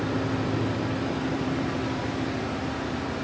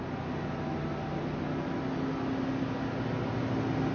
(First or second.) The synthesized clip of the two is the first